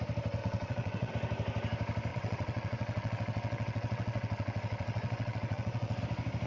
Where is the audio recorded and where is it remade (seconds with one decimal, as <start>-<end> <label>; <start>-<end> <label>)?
0.0-0.4 recorded; 0.4-1.1 remade; 1.1-2.1 recorded; 2.1-6.0 remade; 6.0-6.5 recorded